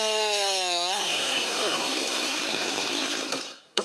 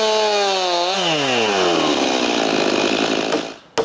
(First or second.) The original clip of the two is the second